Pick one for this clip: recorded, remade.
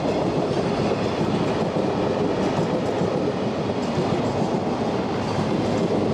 recorded